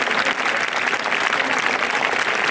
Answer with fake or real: real